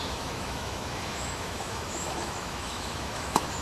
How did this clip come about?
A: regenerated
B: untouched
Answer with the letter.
A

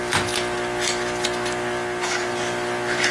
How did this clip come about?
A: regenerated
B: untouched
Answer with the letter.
B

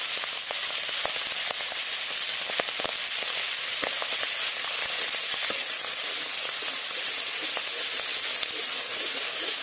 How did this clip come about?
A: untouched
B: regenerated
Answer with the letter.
A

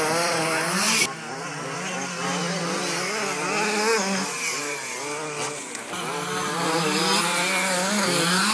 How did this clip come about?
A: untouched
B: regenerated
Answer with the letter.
A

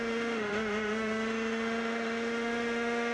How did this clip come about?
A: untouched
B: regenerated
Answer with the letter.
B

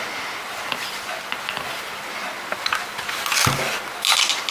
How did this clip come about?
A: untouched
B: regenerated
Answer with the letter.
A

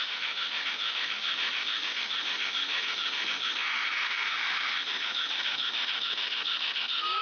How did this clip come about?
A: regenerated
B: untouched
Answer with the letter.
A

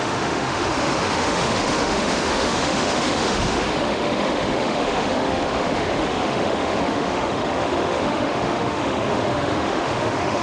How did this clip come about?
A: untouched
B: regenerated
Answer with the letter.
B